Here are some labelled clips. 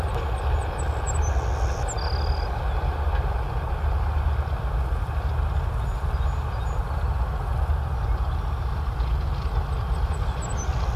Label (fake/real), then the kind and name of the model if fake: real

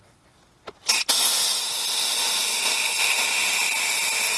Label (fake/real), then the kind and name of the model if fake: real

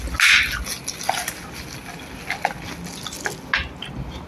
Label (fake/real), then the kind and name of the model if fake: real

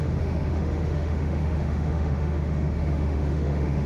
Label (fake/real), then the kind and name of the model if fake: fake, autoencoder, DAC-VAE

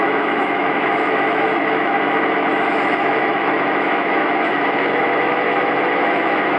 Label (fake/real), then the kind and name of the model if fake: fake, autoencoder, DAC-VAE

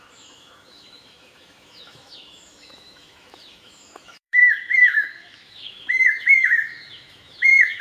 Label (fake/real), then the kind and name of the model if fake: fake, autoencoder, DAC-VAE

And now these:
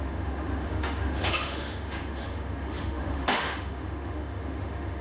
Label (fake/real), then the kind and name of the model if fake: fake, autoencoder, DAC-VAE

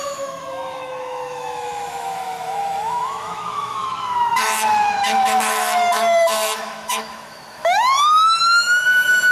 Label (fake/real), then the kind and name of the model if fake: fake, autoencoder, DAC-VAE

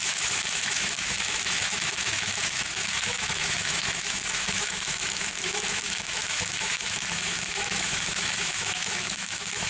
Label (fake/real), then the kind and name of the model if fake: fake, autoencoder, DAC-VAE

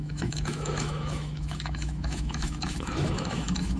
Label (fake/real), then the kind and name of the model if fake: fake, autoencoder, DAC-VAE